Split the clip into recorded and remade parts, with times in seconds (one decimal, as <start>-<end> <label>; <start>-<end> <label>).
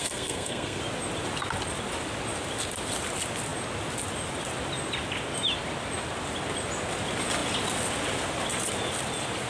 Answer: 0.0-0.8 remade; 0.8-9.5 recorded